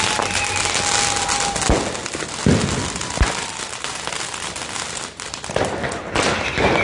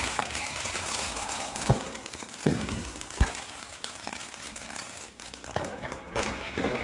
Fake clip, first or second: second